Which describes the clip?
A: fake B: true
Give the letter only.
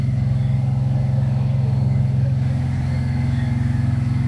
A